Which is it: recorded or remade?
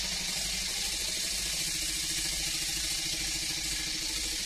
recorded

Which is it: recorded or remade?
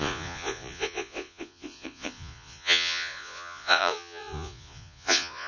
remade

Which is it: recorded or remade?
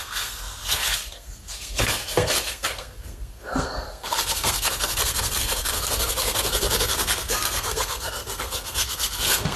remade